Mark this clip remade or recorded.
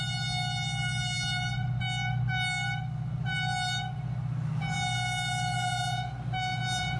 recorded